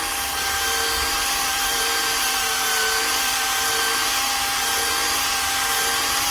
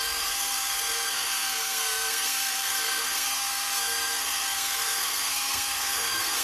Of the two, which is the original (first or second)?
first